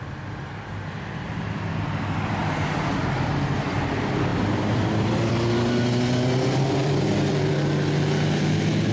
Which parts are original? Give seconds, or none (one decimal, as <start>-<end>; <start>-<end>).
0.0-2.4; 3.9-4.3; 5.3-6.8; 7.5-8.9